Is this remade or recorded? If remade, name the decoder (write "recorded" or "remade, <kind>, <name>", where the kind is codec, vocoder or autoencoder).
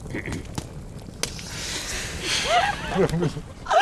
recorded